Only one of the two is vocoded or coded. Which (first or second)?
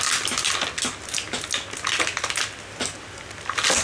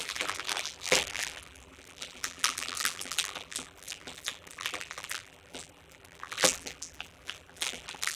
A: second